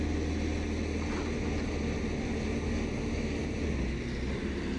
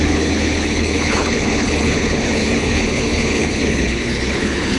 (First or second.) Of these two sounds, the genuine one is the first